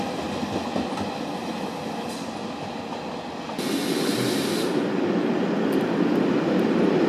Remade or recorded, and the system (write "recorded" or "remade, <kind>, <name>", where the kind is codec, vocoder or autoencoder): recorded